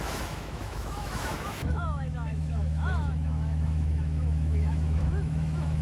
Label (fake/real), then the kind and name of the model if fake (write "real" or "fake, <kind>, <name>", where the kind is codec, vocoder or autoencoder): fake, autoencoder, DAC-VAE